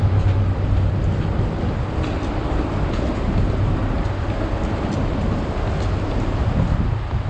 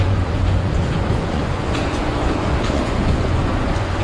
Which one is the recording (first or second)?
first